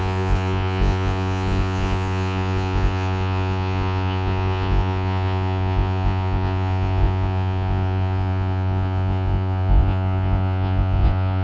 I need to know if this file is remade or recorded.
remade